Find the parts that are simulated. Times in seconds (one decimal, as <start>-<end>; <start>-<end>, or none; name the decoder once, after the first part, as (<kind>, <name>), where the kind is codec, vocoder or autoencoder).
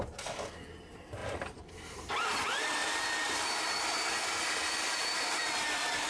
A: 1.2-2.1 (vocoder, BigVGAN v2); 2.8-5.5